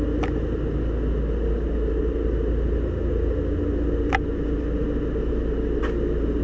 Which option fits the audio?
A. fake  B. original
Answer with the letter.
B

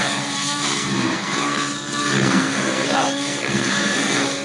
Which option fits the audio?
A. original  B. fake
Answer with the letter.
B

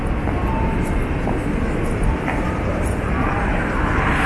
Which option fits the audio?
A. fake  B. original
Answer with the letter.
B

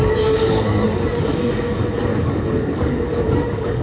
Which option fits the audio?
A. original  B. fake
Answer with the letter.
B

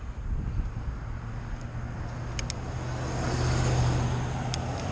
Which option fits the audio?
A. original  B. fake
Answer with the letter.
A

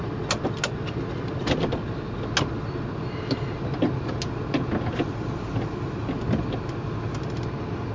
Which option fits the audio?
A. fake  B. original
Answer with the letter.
B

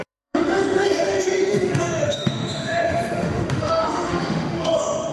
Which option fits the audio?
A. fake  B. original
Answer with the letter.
A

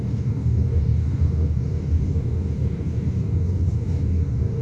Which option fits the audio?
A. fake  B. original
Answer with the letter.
A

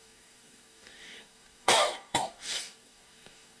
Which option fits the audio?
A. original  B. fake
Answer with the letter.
B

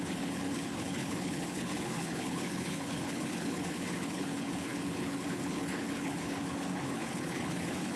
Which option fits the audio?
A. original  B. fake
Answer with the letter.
B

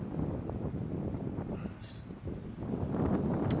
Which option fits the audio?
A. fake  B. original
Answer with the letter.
B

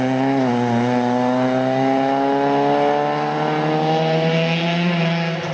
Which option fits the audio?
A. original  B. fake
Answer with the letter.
A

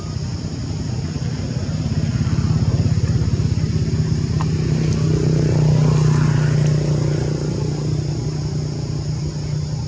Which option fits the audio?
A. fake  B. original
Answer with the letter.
B